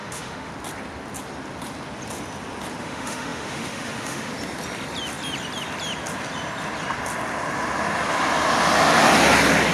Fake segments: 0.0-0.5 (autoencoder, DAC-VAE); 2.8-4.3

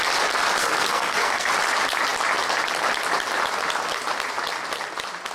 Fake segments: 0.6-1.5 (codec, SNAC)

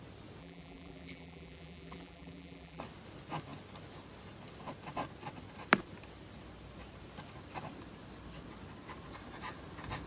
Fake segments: 0.4-2.8 (vocoder, BigVGAN v2)

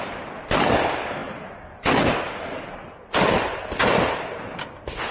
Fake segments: none

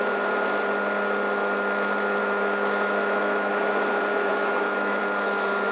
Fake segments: 2.2-3.5 (autoencoder, DAC-VAE); 4.3-5.0

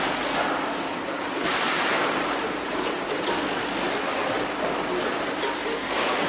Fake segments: 0.0-6.3 (vocoder, BigVGAN v2)

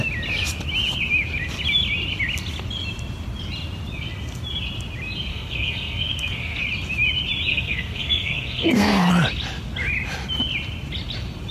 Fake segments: 5.3-6.6 (codec, SNAC); 7.5-9.1

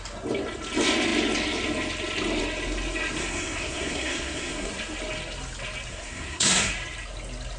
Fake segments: 3.2-4.7 (codec, SNAC); 5.9-6.7